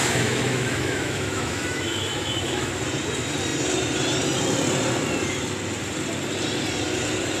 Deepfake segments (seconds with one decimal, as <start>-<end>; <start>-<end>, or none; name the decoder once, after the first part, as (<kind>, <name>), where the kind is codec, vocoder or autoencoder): 0.0-2.7 (autoencoder, DAC-VAE)